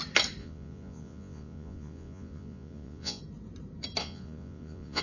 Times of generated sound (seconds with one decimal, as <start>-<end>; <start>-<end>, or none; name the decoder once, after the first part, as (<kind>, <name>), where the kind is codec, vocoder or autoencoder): 0.4-3.2 (vocoder, Vocos); 4.0-5.0